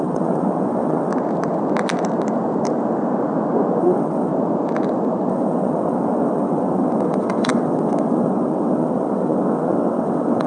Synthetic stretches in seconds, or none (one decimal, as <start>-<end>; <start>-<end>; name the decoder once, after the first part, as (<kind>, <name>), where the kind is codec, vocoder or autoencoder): 0.0-1.1 (vocoder, WaveNeXt); 3.8-4.3; 5.3-10.5